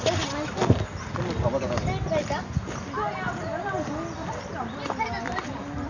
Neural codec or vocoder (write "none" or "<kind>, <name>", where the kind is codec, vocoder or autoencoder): none